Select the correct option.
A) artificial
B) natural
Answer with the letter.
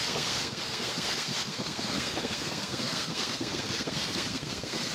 A